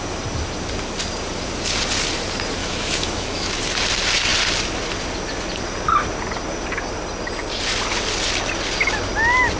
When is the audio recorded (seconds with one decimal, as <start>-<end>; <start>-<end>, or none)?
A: 0.0-2.6; 3.6-9.6

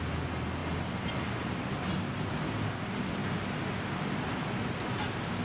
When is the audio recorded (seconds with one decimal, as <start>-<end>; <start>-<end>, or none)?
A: 0.0-3.2; 4.1-5.4

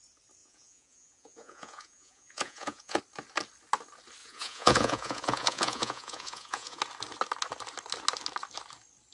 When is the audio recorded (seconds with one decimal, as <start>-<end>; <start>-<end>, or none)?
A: 0.0-0.4; 3.0-4.2; 6.8-9.1

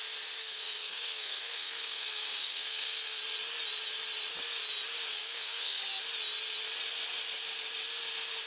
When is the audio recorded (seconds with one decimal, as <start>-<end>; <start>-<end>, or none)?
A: 0.0-0.4; 3.2-5.1; 5.8-8.5